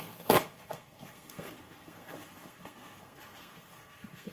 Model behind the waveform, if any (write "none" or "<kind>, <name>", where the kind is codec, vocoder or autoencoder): codec, SNAC